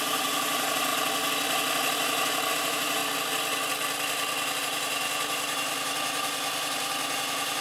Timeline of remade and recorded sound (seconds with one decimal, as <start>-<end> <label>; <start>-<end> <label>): 0.0-0.9 remade; 0.9-2.5 recorded; 2.5-3.0 remade; 3.0-4.6 recorded; 4.6-7.6 remade

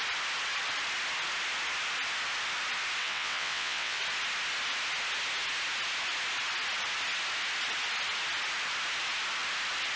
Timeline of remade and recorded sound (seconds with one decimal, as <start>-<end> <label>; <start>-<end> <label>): 0.0-3.0 recorded; 3.0-4.0 remade; 4.0-10.0 recorded